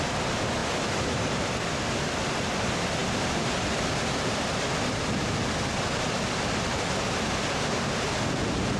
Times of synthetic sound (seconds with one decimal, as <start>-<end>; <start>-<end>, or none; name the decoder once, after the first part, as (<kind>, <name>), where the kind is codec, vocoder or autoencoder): 3.0-7.1 (vocoder, BigVGAN v2)